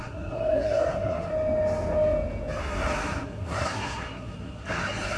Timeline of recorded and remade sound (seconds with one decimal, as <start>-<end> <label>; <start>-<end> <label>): 0.0-1.3 remade; 1.3-2.6 recorded; 2.6-5.2 remade

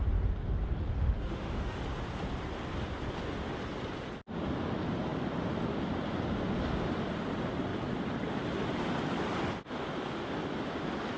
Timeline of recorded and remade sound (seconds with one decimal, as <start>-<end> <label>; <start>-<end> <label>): 0.0-0.9 recorded; 0.9-1.8 remade; 1.8-11.2 recorded

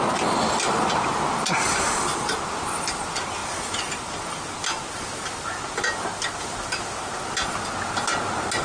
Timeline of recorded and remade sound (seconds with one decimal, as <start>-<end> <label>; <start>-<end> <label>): 0.0-8.6 recorded

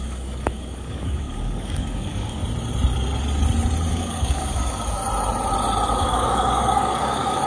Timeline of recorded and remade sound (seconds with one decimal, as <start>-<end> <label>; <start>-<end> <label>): 0.0-2.4 remade; 2.4-3.9 recorded; 3.9-5.0 remade; 5.0-5.9 recorded; 5.9-7.5 remade

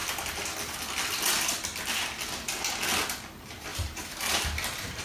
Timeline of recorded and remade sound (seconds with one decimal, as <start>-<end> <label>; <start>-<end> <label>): 0.0-3.7 recorded; 3.7-5.0 remade

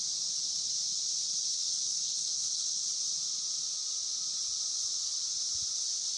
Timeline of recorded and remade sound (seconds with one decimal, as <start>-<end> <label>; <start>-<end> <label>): 0.0-1.6 recorded; 1.6-2.8 remade; 2.8-6.2 recorded

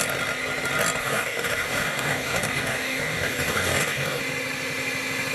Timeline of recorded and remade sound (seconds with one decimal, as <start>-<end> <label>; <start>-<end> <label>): 0.0-1.0 recorded; 1.0-4.2 remade; 4.2-5.3 recorded